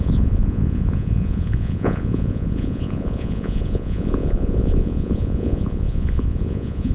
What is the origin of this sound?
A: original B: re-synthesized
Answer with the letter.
B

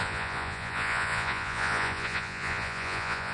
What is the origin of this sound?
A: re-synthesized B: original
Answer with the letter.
A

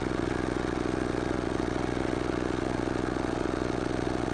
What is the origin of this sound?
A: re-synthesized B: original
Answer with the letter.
A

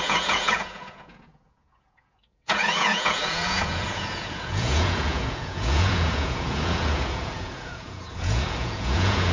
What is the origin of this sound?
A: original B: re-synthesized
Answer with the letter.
B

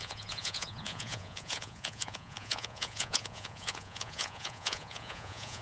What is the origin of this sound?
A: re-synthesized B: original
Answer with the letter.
A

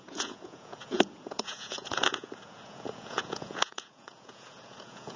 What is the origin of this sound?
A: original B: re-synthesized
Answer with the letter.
B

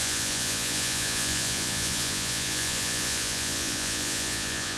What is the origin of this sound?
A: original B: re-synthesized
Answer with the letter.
B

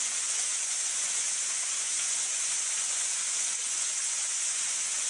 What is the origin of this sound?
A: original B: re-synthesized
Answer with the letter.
B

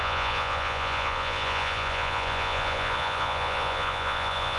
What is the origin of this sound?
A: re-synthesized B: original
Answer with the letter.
A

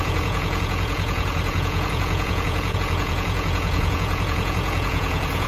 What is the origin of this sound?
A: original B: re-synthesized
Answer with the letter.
B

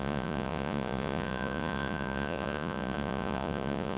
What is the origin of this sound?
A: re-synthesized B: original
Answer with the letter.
A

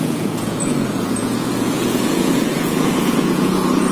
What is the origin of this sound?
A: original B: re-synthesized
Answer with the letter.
B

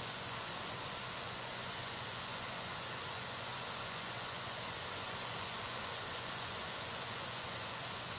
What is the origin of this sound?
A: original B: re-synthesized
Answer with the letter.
B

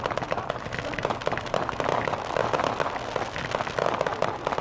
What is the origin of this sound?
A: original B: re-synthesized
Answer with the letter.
A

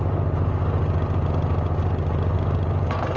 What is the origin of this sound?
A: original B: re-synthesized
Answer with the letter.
A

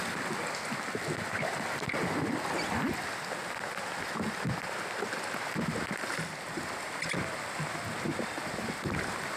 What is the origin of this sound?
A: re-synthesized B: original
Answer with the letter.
B